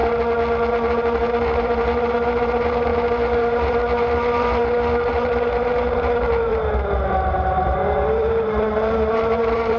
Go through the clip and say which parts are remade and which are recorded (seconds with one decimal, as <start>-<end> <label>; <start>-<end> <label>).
0.0-0.7 recorded; 0.7-6.5 remade; 6.5-7.3 recorded; 7.3-9.8 remade